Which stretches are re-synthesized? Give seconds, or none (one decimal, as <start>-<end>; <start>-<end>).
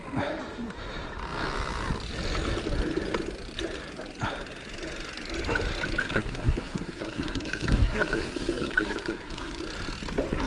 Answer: 6.0-9.6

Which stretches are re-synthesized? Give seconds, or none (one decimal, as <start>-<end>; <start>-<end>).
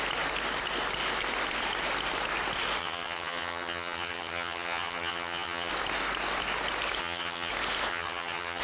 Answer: 2.8-5.7; 7.0-7.5; 7.9-8.6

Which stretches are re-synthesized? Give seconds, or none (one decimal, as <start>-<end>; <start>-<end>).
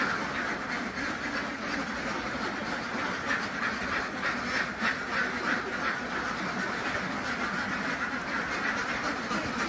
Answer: none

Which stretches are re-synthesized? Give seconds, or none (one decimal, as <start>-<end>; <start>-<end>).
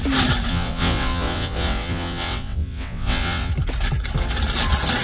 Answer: 0.5-3.5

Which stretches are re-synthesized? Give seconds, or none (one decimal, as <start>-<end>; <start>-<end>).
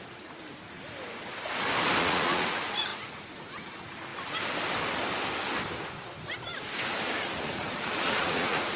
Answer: 0.0-0.4; 2.0-4.1; 7.4-8.8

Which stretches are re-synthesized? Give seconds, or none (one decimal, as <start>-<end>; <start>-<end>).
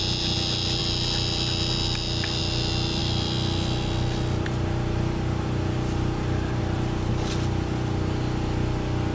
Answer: none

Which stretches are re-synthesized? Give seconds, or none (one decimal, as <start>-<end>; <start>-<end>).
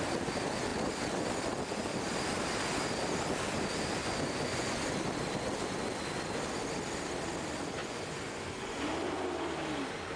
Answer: 4.0-4.9; 7.8-8.9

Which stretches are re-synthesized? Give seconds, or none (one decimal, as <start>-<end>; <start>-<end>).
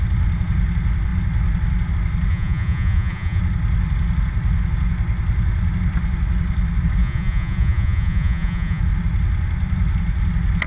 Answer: 2.3-3.4; 7.0-8.8